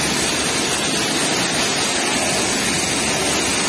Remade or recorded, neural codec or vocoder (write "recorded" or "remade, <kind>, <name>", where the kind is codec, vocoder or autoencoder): recorded